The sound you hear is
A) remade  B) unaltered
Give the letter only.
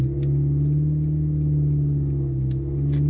B